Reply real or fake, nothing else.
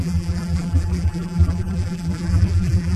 fake